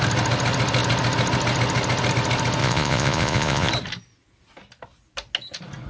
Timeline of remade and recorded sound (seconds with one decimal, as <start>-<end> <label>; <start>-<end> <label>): 0.0-2.6 recorded; 2.6-3.7 remade; 3.7-5.9 recorded